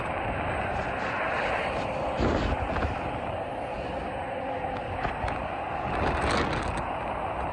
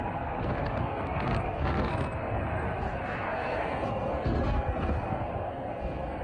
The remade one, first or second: second